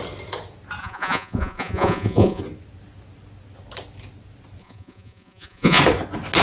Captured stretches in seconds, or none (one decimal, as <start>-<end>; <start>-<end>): 0.0-0.8; 2.4-4.6; 5.8-6.4